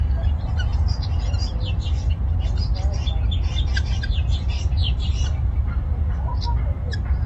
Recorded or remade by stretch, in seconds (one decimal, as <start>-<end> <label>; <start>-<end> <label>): 0.0-4.8 recorded; 4.8-5.4 remade; 5.4-7.3 recorded